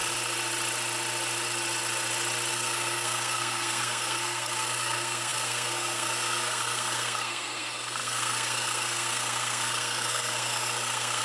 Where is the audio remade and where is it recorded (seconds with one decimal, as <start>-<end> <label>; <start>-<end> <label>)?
0.0-2.5 recorded; 2.5-11.2 remade

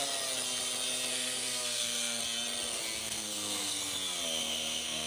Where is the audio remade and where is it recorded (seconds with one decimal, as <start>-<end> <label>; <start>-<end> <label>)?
0.0-1.1 recorded; 1.1-2.2 remade; 2.2-3.0 recorded; 3.0-3.8 remade; 3.8-4.4 recorded; 4.4-5.1 remade

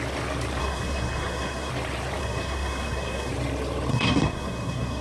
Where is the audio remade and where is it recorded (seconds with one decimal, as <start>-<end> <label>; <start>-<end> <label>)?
0.0-0.6 recorded; 0.6-1.7 remade; 1.7-2.2 recorded; 2.2-3.3 remade; 3.3-3.9 recorded; 3.9-5.0 remade

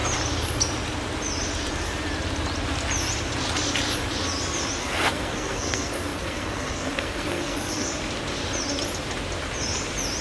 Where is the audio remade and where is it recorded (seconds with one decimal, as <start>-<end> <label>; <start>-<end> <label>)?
0.0-4.8 recorded; 4.8-7.9 remade; 7.9-10.2 recorded

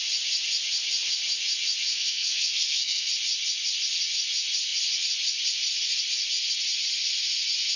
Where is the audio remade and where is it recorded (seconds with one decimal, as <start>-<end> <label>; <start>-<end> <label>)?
0.0-1.9 recorded; 1.9-3.1 remade; 3.1-7.8 recorded

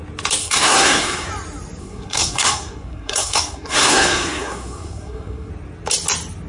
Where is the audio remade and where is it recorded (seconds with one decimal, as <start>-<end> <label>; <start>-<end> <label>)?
0.0-0.4 recorded; 0.4-1.3 remade; 1.3-1.8 recorded; 1.8-5.5 remade; 5.5-6.5 recorded

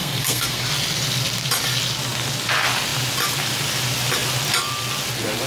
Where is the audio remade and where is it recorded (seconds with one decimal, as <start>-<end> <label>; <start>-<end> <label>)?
0.0-0.6 remade; 0.6-5.5 recorded